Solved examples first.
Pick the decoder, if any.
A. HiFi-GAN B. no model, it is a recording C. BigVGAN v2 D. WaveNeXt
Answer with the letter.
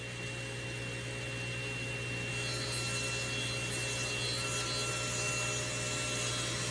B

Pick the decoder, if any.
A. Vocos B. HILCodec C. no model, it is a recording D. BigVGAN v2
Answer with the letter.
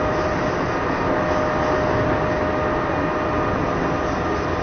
C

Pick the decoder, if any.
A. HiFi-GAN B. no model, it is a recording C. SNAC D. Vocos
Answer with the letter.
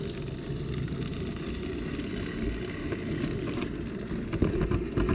B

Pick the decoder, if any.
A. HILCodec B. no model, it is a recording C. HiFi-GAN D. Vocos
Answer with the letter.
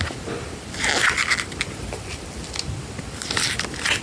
B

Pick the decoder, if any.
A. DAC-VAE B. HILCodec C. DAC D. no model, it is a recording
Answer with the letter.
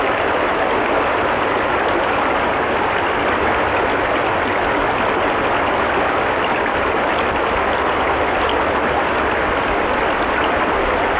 D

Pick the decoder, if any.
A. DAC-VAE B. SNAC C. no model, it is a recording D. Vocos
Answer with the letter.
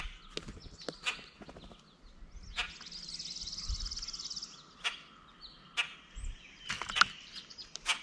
C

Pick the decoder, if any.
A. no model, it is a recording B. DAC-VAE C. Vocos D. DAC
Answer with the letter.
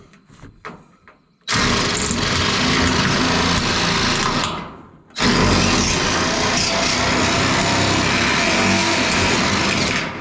A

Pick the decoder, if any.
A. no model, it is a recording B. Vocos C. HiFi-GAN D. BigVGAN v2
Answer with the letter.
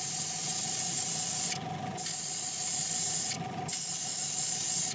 A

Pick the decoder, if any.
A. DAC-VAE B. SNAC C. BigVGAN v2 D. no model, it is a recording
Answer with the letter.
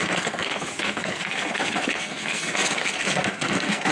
B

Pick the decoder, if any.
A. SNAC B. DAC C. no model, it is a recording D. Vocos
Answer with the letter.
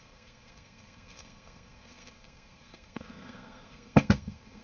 A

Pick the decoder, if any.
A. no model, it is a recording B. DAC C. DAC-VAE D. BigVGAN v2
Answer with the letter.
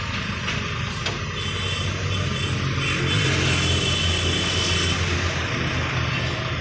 A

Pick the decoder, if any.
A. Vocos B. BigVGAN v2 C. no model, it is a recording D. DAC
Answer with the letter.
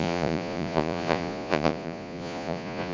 A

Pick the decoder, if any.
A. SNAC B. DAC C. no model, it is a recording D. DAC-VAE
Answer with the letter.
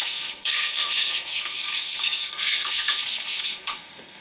A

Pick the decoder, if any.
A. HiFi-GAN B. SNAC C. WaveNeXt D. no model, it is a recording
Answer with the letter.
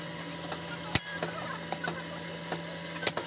D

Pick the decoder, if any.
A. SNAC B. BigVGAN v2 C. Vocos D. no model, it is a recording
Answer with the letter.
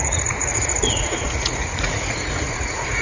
C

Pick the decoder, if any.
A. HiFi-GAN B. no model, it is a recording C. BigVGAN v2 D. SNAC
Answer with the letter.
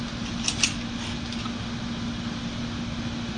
B